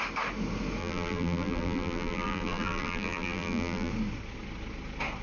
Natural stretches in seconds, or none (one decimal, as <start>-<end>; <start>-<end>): 0.0-0.8; 3.9-5.2